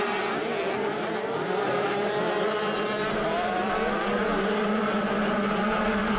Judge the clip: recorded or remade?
recorded